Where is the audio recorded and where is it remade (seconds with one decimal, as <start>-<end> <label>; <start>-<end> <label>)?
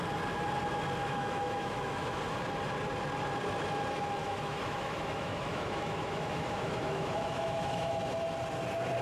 0.0-1.0 recorded; 1.0-2.2 remade; 2.2-4.2 recorded; 4.2-8.0 remade; 8.0-9.0 recorded